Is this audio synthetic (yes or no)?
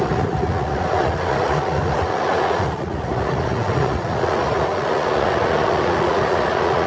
yes